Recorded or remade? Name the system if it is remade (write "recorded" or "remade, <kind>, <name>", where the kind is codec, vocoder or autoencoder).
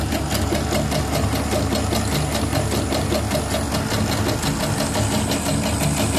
recorded